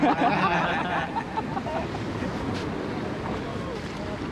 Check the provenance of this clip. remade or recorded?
recorded